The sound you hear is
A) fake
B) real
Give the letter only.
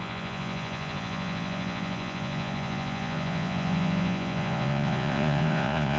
A